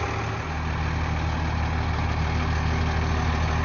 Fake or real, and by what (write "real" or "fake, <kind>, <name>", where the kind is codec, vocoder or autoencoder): real